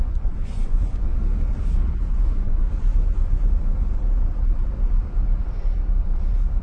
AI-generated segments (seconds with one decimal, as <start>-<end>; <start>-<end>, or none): 0.0-1.1; 2.1-2.6